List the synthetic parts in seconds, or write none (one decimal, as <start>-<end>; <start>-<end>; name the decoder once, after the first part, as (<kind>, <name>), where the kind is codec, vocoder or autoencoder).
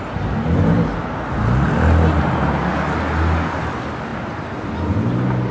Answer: none